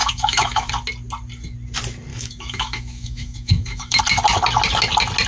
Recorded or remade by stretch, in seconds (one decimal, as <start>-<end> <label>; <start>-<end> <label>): 0.0-0.7 remade; 0.7-2.1 recorded; 2.1-4.0 remade; 4.0-5.3 recorded